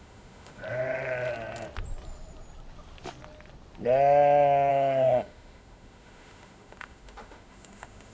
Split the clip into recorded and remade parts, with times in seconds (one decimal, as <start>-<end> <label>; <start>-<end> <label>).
0.0-0.6 remade; 0.6-4.7 recorded; 4.7-8.1 remade